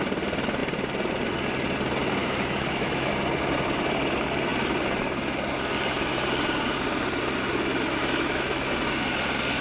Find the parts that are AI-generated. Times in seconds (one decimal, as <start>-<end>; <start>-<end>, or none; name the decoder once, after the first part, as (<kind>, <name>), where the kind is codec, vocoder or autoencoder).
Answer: 2.2-3.1 (autoencoder, DAC-VAE); 8.0-8.7